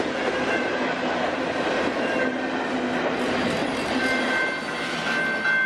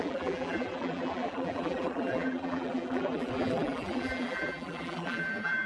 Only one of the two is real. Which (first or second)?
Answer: first